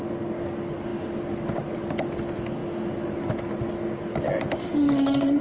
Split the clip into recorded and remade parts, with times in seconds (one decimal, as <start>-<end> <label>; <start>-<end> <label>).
0.0-4.6 recorded; 4.6-5.4 remade